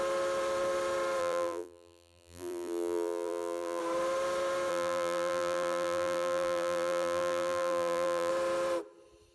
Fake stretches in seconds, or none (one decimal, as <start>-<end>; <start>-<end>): 1.2-3.8; 4.7-8.3